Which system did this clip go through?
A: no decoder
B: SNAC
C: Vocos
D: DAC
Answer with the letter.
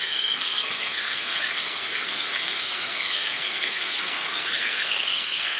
B